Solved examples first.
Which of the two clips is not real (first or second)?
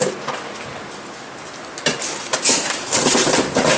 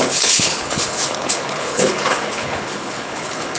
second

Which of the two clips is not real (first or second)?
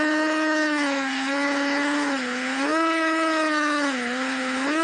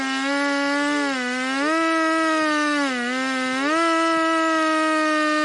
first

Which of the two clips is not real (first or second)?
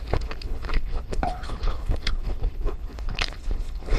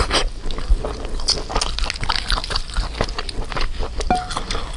first